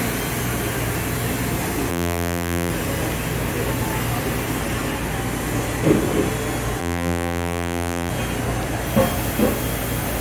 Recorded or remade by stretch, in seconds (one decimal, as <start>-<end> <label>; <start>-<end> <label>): 0.0-1.9 recorded; 1.9-2.7 remade; 2.7-6.8 recorded; 6.8-8.1 remade; 8.1-10.2 recorded